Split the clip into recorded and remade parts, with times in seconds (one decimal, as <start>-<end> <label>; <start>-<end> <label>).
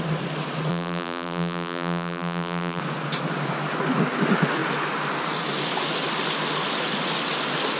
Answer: 0.0-0.7 recorded; 0.7-2.8 remade; 2.8-7.8 recorded